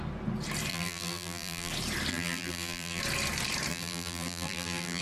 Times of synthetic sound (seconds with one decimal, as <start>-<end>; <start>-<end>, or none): 0.7-1.7; 2.1-3.0; 3.7-5.0